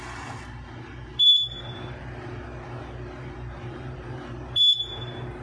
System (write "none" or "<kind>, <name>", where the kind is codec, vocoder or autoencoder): vocoder, BigVGAN v2